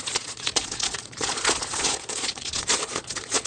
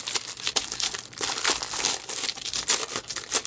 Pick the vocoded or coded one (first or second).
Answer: first